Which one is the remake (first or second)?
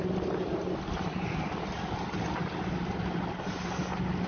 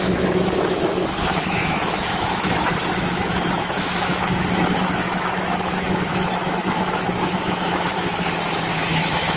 second